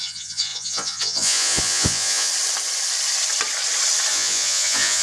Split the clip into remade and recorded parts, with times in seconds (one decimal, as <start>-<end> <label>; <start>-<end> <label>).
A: 0.0-2.3 remade; 2.3-4.1 recorded; 4.1-5.0 remade